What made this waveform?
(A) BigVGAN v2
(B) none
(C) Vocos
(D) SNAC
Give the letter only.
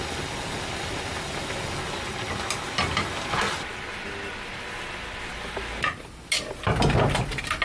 B